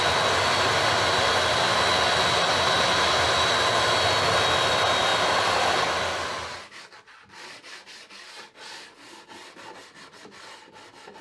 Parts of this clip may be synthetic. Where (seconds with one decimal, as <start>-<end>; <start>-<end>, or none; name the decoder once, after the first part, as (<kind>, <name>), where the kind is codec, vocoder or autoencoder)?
none